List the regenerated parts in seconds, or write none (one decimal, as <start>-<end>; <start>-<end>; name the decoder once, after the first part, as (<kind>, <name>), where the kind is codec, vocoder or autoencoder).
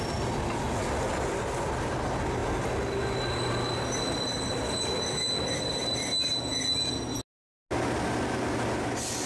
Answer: none